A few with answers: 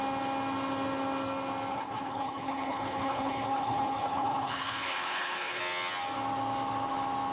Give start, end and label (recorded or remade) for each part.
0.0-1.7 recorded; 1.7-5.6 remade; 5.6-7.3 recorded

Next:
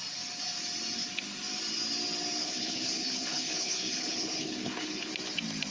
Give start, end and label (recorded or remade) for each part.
0.0-2.4 recorded; 2.4-5.1 remade; 5.1-5.7 recorded